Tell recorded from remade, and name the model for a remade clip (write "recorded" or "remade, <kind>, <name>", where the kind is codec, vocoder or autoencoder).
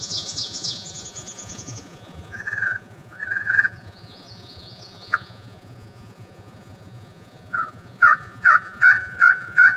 remade, vocoder, Vocos